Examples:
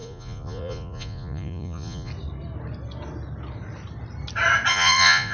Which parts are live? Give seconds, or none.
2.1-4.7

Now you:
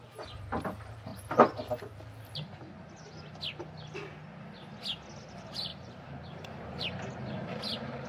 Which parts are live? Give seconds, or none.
1.1-5.2